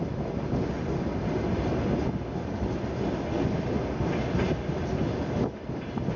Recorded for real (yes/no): yes